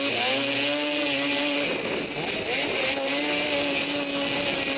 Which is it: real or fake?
real